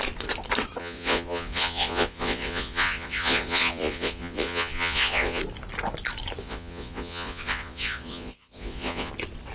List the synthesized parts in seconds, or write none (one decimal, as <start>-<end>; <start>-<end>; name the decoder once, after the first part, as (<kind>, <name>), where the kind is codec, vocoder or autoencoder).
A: 0.8-5.4 (vocoder, Vocos); 6.4-9.1